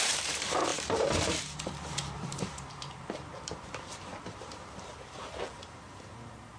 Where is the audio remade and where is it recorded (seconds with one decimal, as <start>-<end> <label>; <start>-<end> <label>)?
0.0-6.6 remade